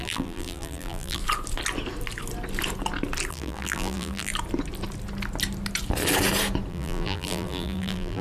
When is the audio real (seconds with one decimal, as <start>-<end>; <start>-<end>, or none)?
1.2-3.3; 4.3-6.7